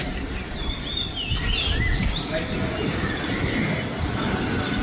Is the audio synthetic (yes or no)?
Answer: no